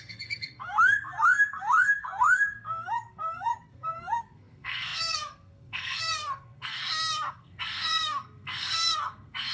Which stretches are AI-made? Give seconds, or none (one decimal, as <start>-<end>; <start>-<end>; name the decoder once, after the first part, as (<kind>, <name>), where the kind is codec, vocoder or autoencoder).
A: 0.0-6.8 (codec, SNAC); 7.3-9.5